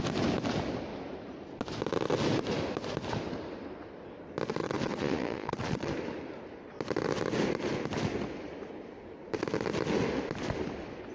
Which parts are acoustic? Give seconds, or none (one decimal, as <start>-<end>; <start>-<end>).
0.0-4.6; 5.9-11.1